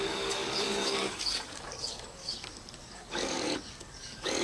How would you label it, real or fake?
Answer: fake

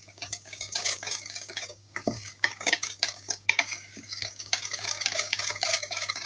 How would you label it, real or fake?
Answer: fake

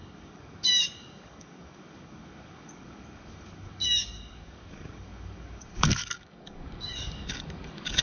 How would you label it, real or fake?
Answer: fake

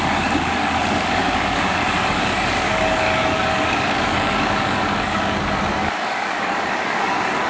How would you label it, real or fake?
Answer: fake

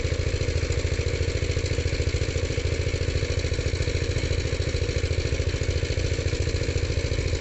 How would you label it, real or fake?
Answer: real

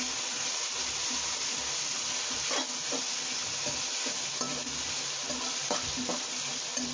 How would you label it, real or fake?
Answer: real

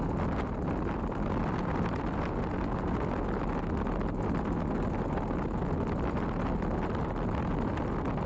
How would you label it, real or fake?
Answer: real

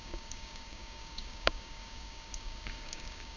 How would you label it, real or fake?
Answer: fake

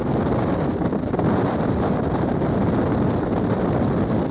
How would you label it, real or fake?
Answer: real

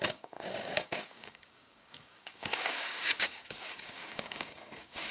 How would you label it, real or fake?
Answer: fake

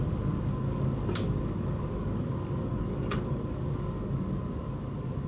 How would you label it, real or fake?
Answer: fake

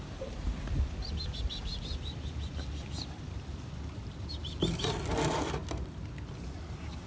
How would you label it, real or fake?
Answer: real